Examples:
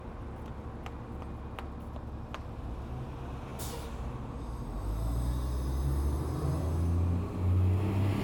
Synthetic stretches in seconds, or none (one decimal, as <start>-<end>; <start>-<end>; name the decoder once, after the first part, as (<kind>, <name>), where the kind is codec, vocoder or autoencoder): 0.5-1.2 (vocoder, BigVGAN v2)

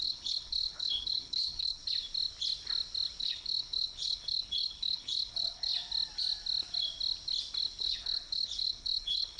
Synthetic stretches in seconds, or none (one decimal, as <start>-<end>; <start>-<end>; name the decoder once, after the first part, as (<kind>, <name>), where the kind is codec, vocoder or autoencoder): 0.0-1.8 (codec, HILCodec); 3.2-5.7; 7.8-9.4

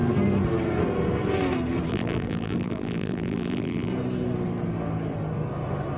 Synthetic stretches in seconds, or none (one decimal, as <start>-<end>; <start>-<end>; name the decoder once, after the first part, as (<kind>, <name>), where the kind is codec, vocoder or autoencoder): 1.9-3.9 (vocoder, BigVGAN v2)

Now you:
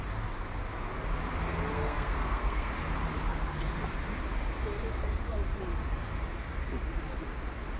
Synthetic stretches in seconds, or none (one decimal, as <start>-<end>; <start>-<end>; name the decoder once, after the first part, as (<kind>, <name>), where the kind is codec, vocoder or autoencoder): 1.7-2.7 (codec, SNAC)

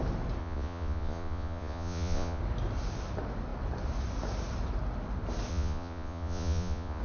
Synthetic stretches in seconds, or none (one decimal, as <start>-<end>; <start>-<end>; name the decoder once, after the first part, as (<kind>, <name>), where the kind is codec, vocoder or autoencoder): 0.4-2.4 (vocoder, Vocos); 5.5-7.0